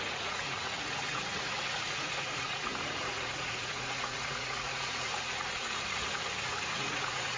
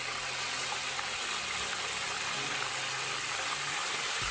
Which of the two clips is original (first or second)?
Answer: second